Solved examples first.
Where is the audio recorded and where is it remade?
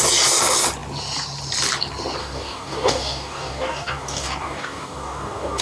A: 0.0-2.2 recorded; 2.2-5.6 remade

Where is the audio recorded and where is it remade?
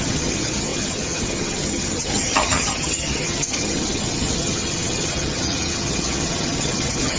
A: 0.0-7.2 remade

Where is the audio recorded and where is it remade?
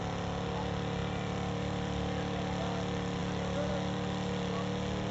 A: 0.0-1.0 recorded; 1.0-2.0 remade; 2.0-5.1 recorded